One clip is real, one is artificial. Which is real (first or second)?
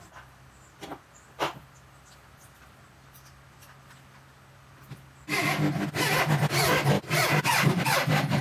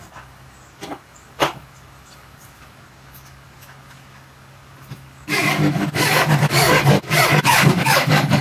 first